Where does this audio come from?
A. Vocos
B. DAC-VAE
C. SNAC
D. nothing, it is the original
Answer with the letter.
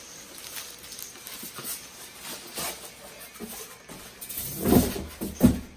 D